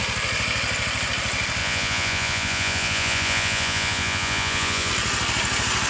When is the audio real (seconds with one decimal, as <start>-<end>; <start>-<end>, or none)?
0.0-1.6; 4.9-5.9